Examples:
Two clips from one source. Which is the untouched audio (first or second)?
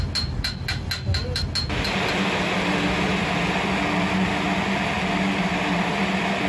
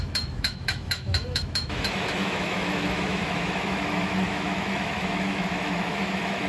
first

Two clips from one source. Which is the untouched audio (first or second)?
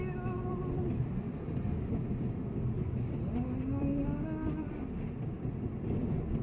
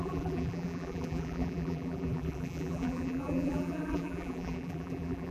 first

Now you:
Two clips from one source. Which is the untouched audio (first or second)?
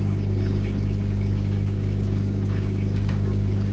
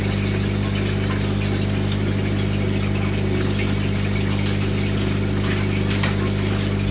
second